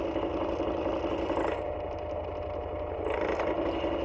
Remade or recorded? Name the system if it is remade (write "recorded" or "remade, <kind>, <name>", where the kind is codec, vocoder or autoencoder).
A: recorded